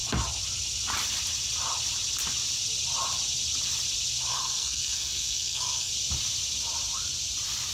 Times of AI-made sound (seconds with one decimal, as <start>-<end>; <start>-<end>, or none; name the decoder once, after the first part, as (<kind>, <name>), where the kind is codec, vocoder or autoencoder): 4.3-5.9 (codec, SNAC)